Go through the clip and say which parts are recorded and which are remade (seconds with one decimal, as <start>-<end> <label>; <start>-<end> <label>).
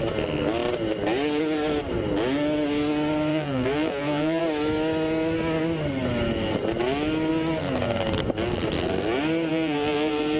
0.0-3.3 recorded; 3.3-4.4 remade; 4.4-9.5 recorded; 9.5-10.4 remade